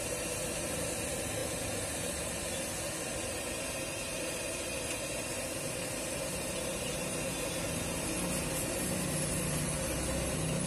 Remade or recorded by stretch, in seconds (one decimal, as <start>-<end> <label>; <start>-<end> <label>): 0.0-10.7 recorded